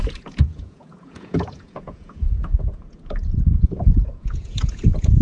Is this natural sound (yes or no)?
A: no